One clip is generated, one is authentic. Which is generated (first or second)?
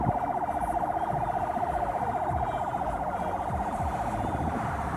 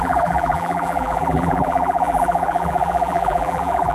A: second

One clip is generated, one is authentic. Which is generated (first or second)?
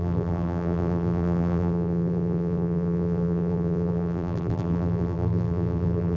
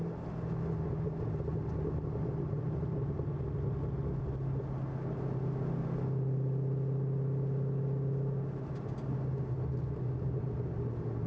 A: first